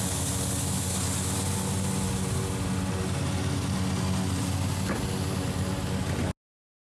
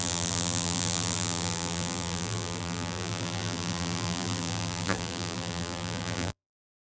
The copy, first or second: second